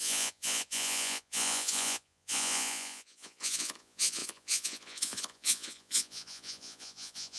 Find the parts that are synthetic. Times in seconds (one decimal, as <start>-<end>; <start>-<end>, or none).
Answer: 0.0-7.4